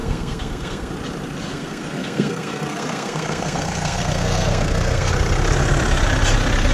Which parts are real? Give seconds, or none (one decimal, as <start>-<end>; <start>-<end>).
0.9-1.5; 5.1-6.7